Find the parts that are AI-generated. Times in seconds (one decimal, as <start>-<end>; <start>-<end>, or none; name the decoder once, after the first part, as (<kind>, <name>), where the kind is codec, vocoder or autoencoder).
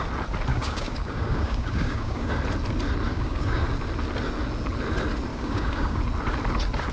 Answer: 0.5-2.3 (codec, DAC); 3.1-3.6; 5.3-6.0